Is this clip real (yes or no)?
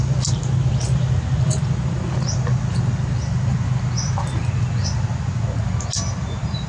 yes